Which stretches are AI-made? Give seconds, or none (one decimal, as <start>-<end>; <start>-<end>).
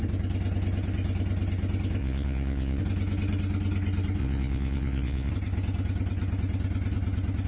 2.0-2.8; 4.2-5.3